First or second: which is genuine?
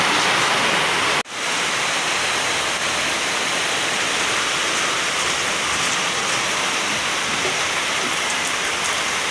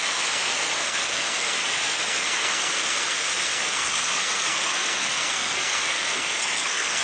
first